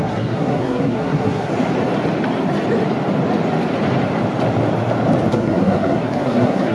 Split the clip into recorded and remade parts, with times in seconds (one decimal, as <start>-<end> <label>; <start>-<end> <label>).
0.0-1.5 remade; 1.5-5.3 recorded; 5.3-6.7 remade